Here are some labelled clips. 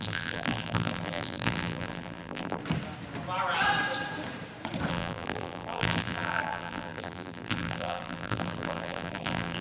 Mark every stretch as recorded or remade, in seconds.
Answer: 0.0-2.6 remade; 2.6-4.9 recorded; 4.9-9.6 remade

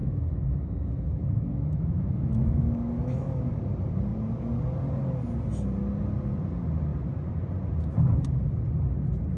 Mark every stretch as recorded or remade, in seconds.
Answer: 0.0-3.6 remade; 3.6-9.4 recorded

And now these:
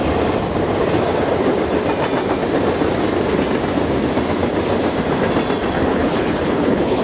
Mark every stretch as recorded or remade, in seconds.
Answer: 0.0-5.9 recorded; 5.9-7.0 remade

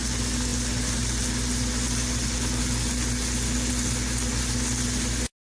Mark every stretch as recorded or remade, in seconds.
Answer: 0.0-5.4 recorded